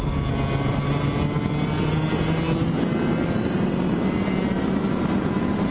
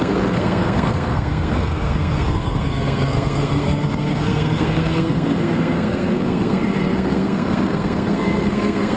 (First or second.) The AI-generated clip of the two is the second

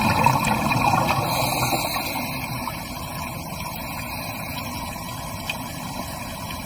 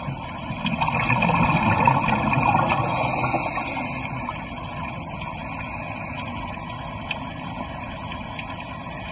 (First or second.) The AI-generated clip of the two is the first